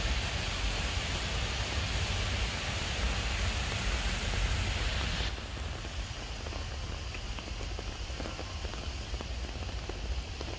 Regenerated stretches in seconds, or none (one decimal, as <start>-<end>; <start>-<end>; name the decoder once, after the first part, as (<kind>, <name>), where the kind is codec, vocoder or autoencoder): none